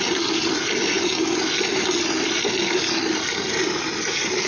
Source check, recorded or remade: recorded